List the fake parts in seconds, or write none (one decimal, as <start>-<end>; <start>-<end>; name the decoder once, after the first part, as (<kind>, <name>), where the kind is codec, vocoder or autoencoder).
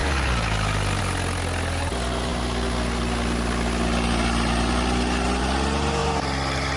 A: none